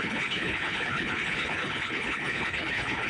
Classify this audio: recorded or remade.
remade